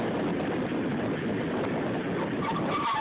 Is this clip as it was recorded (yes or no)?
yes